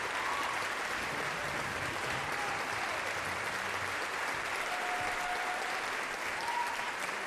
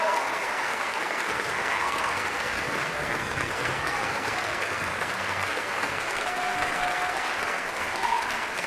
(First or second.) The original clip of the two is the first